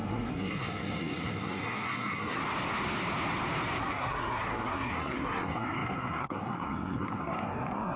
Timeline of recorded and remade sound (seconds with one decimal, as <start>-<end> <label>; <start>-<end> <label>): 0.0-2.4 remade; 2.4-3.8 recorded; 3.8-8.0 remade